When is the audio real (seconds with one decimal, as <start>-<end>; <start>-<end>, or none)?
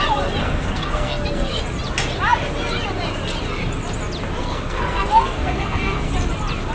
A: 0.0-0.4; 1.6-4.4; 6.1-6.7